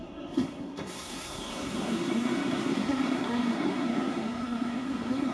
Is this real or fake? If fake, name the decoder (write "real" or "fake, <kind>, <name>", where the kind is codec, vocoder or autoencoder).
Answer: fake, codec, SNAC